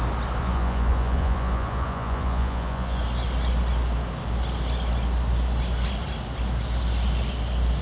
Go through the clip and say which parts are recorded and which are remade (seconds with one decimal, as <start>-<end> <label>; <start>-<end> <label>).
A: 0.0-0.4 recorded; 0.4-3.0 remade; 3.0-7.8 recorded